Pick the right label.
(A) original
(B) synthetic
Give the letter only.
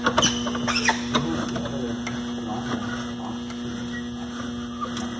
A